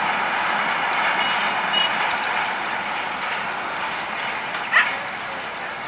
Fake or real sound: real